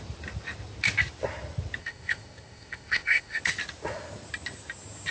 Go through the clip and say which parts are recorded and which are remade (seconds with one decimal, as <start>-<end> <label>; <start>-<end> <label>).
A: 0.0-1.8 recorded; 1.8-3.4 remade; 3.4-5.1 recorded